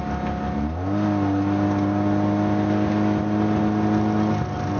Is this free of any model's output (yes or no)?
yes